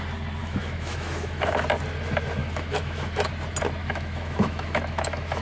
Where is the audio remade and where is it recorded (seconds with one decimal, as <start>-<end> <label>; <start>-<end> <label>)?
0.0-0.4 recorded; 0.4-1.6 remade; 1.6-2.4 recorded; 2.4-3.3 remade; 3.3-3.8 recorded; 3.8-5.4 remade